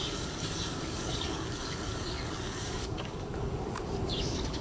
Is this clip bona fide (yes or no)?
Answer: no